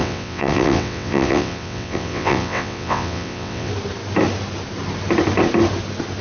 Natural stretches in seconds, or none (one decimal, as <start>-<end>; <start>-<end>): 3.7-6.2